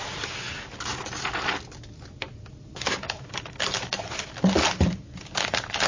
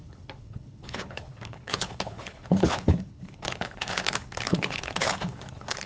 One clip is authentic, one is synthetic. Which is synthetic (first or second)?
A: second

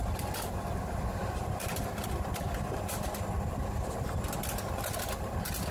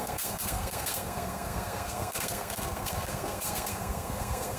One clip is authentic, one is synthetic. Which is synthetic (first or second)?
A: second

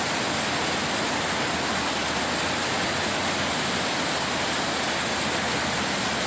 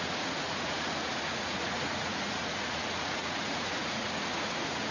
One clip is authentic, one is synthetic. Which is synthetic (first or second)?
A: second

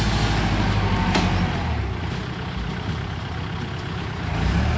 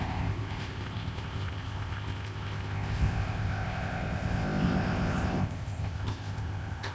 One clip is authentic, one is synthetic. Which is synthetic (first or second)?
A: second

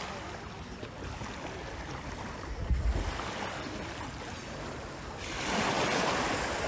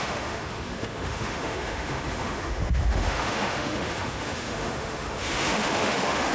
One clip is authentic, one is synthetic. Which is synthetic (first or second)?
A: second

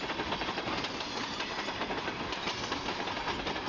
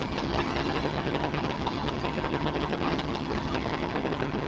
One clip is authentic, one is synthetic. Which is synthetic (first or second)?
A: second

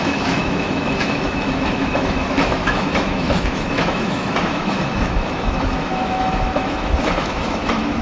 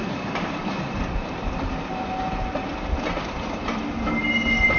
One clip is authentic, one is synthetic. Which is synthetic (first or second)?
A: first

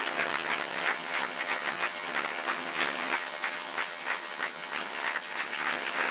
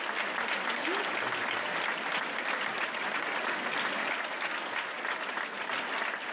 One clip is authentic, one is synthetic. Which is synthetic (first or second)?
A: first